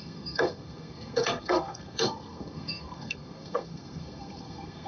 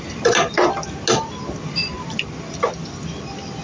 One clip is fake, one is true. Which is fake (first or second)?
first